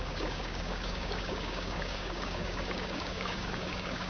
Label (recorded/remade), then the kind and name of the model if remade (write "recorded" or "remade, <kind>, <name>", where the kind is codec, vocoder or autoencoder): remade, codec, DAC